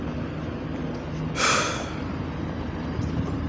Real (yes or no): yes